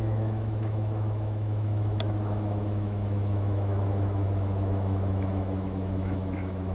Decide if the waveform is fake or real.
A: fake